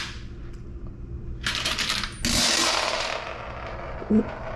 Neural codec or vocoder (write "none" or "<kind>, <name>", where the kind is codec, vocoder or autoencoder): none